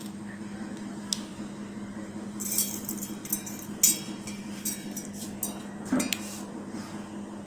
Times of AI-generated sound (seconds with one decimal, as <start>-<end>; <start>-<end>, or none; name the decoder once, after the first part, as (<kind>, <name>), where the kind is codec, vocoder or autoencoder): none